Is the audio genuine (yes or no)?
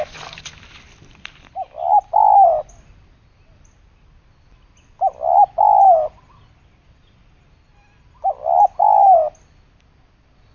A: yes